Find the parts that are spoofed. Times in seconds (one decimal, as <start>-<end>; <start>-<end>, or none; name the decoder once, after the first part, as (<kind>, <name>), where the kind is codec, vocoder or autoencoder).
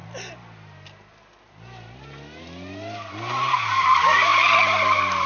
none